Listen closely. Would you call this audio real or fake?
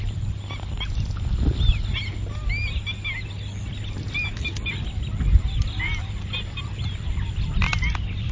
real